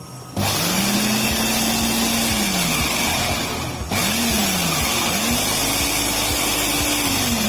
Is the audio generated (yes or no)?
no